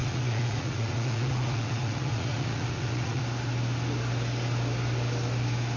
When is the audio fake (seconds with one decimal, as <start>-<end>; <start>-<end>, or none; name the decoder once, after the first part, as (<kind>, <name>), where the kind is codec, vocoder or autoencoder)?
0.0-3.2 (vocoder, Vocos)